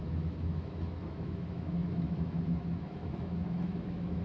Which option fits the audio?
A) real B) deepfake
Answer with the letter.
B